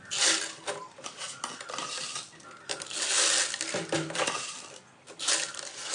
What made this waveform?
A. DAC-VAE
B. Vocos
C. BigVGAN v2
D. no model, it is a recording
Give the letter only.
D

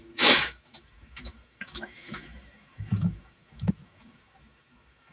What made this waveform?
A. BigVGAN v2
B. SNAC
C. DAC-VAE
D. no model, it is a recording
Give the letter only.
C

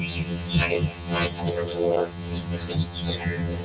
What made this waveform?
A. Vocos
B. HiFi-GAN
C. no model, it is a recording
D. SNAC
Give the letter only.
B